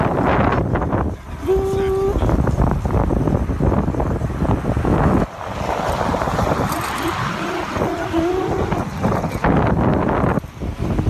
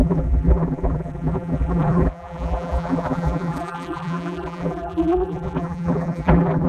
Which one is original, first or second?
first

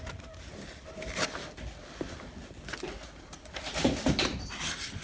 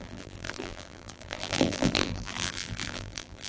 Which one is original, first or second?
first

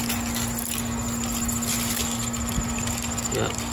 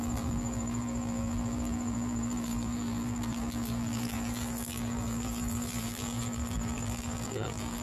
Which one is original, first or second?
first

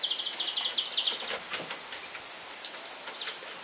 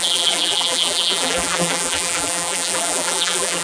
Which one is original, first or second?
first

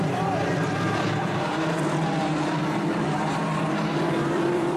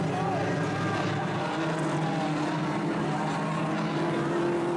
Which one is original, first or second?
second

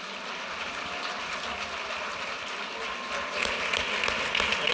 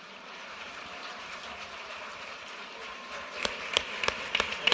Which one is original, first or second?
first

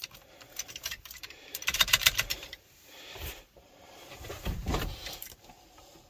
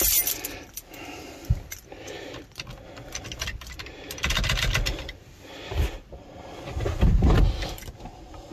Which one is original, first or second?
second